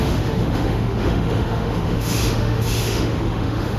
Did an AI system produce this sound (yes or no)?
yes